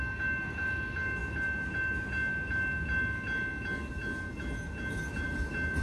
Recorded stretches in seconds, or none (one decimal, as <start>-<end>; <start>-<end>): 0.0-5.8